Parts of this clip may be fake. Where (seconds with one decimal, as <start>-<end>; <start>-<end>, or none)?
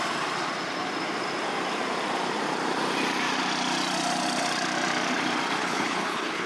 5.6-6.5